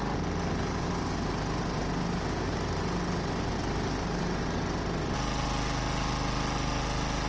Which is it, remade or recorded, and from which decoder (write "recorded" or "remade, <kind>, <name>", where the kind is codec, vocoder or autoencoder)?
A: recorded